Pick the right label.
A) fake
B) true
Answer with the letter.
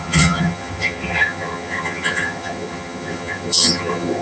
A